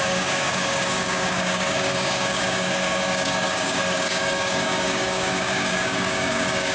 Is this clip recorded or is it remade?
remade